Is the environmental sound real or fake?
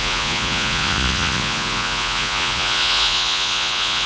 fake